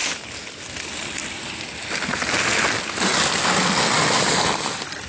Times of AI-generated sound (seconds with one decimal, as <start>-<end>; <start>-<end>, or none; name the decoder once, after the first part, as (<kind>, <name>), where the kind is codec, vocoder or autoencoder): none